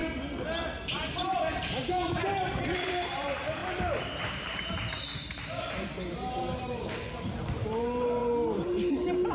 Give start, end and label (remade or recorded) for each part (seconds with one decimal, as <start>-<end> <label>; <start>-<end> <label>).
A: 0.0-1.4 recorded; 1.4-9.3 remade